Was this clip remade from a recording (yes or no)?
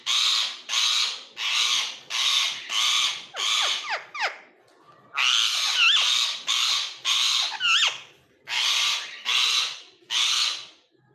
no